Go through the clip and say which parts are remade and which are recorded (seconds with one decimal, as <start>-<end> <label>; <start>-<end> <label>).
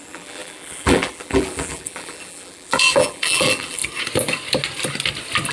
0.0-3.8 remade; 3.8-5.5 recorded